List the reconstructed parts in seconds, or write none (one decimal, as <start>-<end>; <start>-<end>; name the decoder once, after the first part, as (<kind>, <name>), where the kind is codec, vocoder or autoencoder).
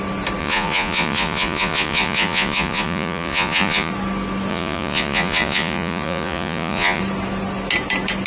0.4-3.9 (vocoder, Vocos); 4.5-7.0